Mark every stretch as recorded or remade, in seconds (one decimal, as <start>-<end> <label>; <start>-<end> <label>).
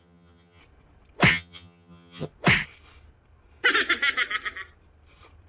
0.0-0.6 remade; 0.6-1.3 recorded; 1.3-2.3 remade; 2.3-5.5 recorded